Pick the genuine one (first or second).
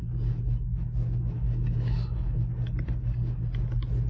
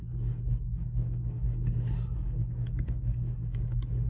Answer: first